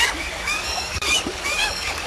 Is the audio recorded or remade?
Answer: remade